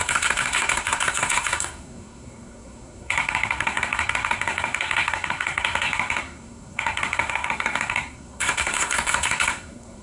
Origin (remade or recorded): remade